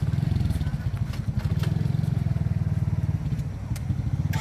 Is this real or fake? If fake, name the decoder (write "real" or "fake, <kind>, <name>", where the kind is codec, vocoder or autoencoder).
real